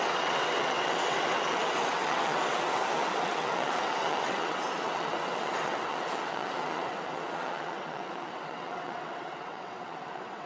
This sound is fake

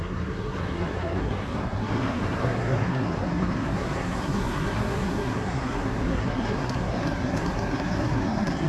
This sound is fake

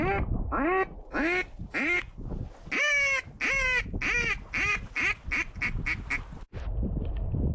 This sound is real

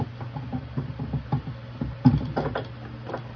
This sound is real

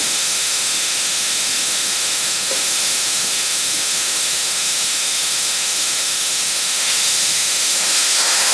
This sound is fake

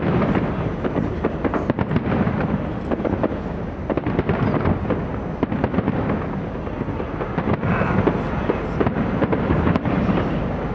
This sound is real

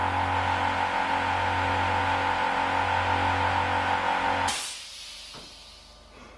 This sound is real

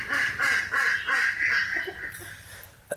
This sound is real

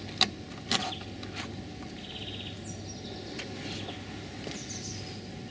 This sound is real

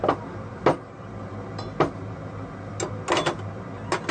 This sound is real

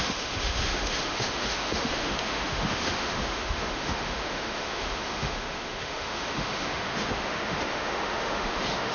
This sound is fake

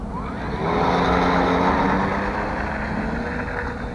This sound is real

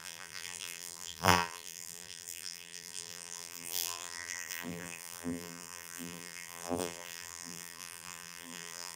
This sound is fake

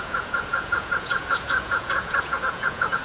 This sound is fake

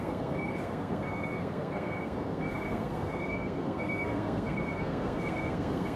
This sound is fake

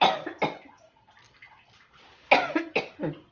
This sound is real